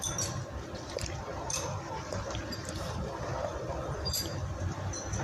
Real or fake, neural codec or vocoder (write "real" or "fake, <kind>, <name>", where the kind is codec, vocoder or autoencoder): fake, vocoder, BigVGAN v2